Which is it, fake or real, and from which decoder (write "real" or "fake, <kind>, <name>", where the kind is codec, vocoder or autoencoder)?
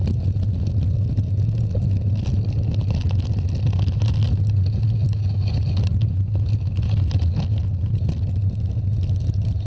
real